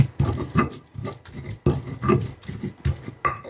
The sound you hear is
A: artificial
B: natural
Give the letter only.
B